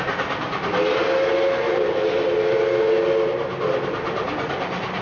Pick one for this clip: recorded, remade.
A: recorded